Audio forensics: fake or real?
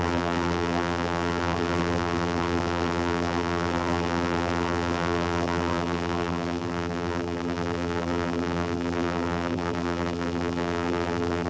fake